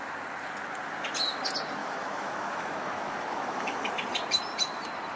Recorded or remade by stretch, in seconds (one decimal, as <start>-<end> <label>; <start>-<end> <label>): 0.0-1.8 recorded; 1.8-3.9 remade; 3.9-5.2 recorded